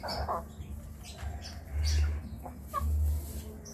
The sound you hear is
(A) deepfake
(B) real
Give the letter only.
B